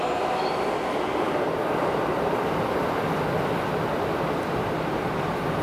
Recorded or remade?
recorded